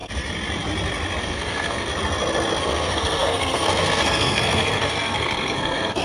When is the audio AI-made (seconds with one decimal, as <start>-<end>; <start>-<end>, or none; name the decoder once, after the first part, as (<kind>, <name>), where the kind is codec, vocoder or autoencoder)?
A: 1.2-1.9 (codec, SNAC); 2.6-6.0